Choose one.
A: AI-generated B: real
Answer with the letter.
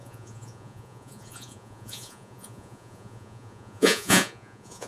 A